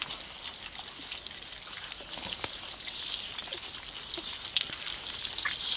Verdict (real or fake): real